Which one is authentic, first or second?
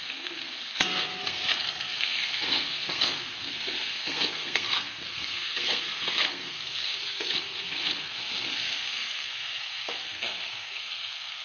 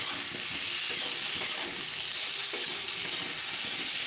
second